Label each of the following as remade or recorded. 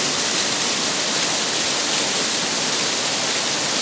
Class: recorded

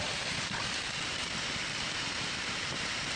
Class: remade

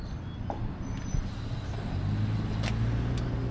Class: recorded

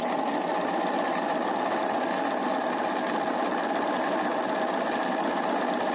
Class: recorded